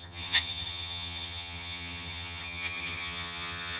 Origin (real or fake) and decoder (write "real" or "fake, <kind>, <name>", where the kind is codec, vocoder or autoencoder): fake, vocoder, HiFi-GAN